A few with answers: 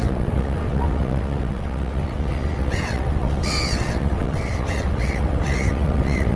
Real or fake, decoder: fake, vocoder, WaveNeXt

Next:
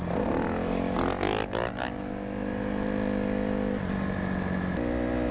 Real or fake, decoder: real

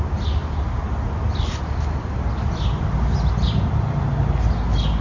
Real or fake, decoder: real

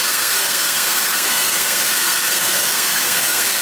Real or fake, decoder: fake, codec, SNAC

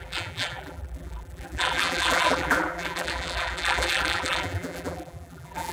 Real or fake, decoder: fake, vocoder, BigVGAN v2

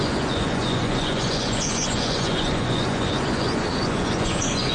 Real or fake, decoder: fake, vocoder, Vocos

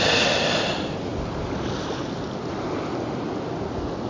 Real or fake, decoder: real